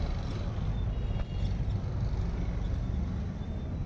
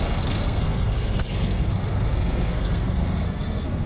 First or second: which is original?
first